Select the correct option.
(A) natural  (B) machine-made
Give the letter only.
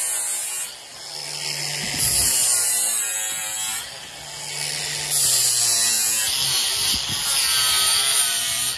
A